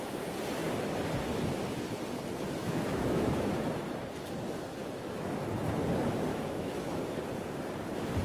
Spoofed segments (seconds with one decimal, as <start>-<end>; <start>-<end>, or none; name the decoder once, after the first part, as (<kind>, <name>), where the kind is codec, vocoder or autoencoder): 2.6-3.5 (autoencoder, DAC-VAE); 4.8-5.4; 6.3-7.0